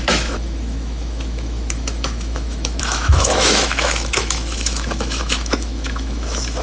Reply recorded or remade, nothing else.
remade